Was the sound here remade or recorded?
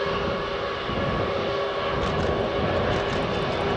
recorded